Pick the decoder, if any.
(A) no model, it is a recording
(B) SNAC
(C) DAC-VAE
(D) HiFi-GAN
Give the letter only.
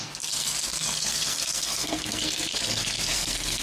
B